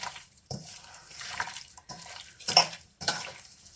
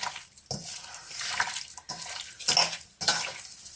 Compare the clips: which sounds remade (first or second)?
first